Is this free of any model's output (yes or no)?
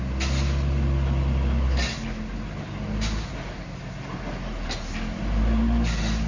yes